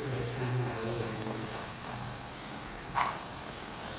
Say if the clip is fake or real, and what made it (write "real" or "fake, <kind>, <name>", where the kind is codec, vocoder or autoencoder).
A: fake, codec, SNAC